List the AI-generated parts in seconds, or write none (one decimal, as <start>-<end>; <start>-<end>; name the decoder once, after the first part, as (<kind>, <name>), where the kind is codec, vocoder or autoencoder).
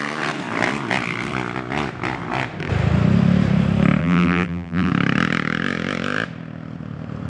4.0-4.9 (vocoder, BigVGAN v2)